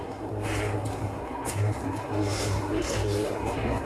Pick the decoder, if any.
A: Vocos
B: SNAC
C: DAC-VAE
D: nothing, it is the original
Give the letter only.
B